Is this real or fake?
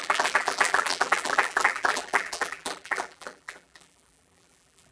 fake